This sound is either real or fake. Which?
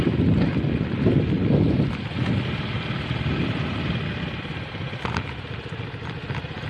real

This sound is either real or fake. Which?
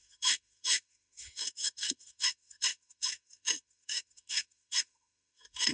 fake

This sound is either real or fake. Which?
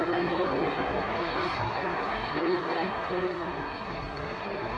fake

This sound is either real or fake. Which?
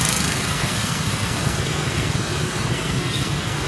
fake